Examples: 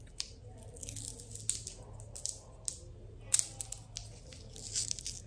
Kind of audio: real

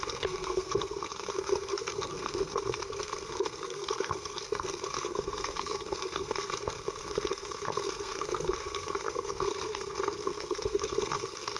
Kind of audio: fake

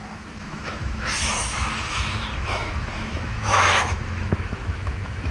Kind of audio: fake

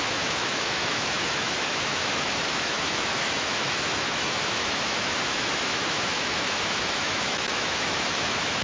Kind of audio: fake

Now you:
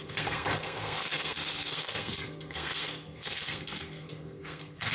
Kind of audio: fake